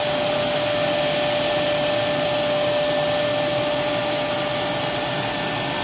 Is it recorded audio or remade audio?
recorded